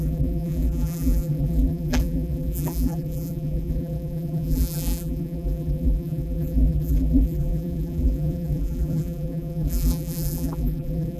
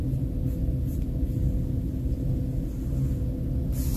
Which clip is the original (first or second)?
second